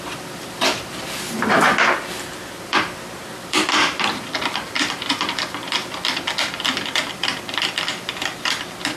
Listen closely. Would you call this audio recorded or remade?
remade